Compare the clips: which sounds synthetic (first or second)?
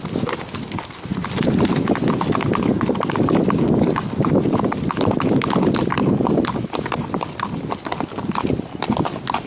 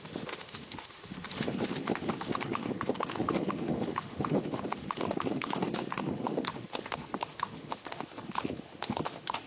second